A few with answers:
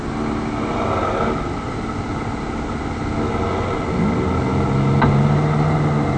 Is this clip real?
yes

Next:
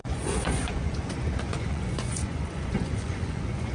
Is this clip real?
no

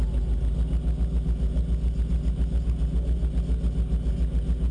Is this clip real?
yes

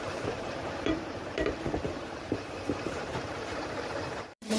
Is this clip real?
no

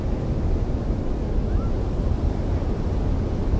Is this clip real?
yes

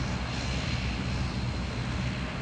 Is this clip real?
yes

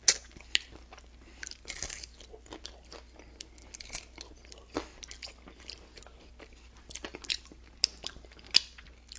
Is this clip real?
yes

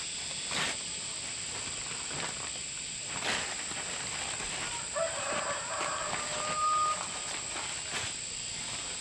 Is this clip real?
yes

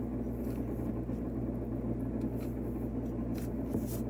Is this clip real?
yes